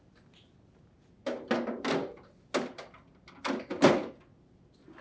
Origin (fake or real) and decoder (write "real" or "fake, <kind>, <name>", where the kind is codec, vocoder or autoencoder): real